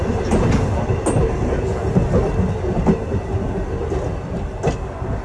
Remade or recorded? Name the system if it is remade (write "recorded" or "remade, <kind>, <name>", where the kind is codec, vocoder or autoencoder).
recorded